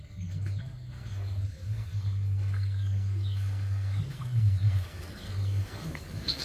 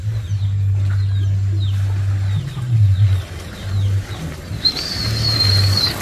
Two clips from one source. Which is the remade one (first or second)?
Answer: first